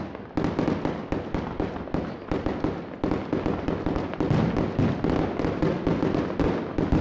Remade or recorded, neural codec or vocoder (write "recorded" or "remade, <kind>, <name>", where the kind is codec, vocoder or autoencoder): recorded